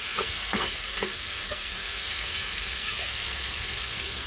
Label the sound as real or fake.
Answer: fake